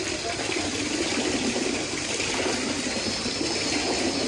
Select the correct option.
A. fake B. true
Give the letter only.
B